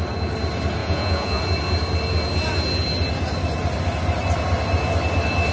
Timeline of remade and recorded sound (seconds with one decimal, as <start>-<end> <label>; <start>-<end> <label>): 0.0-0.8 recorded; 0.8-1.4 remade; 1.4-5.5 recorded